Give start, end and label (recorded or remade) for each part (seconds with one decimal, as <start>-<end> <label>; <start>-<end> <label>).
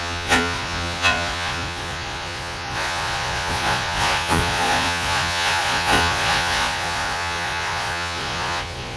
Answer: 0.0-9.0 remade